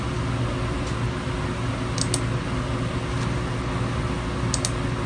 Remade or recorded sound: recorded